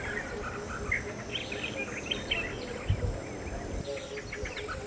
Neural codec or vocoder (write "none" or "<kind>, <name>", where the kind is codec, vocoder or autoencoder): none